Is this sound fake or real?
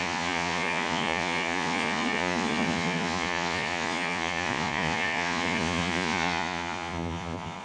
fake